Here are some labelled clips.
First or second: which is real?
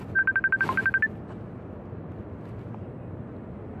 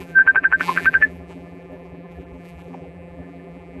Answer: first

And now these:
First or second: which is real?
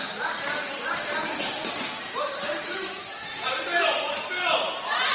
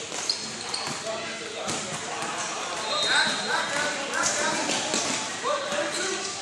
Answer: second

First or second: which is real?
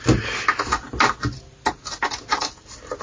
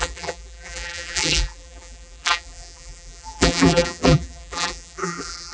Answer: first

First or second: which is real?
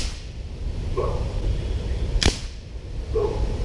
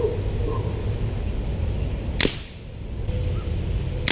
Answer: second